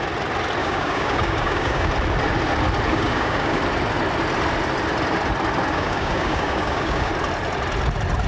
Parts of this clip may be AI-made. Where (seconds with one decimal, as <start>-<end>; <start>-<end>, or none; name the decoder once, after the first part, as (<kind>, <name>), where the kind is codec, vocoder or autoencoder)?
0.6-1.9 (codec, DAC); 2.9-3.6; 5.7-7.1